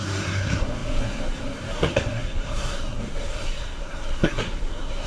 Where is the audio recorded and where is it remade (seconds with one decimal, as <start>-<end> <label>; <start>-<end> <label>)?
0.0-5.1 remade